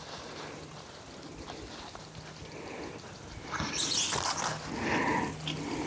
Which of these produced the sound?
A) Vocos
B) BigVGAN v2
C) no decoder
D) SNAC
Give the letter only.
C